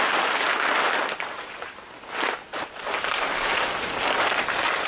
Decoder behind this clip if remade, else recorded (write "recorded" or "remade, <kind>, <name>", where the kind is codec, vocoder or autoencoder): recorded